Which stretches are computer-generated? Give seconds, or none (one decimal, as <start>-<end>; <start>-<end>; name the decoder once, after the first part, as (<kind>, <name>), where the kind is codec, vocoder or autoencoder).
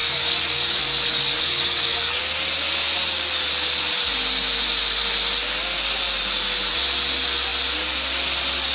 0.0-2.2 (codec, DAC)